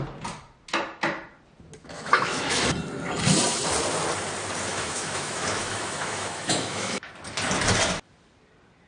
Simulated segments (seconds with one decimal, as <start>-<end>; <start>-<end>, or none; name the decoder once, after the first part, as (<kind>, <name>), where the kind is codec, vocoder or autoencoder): 1.8-2.6 (autoencoder, DAC-VAE); 4.7-7.1